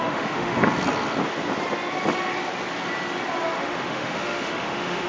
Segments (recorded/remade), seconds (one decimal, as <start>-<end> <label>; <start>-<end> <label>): 0.0-0.5 remade; 0.5-3.6 recorded; 3.6-5.1 remade

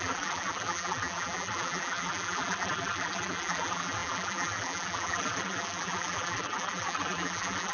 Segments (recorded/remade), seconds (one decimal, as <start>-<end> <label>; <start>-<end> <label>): 0.0-7.7 remade